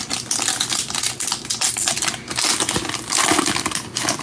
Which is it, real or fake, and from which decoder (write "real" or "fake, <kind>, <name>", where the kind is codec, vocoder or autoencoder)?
real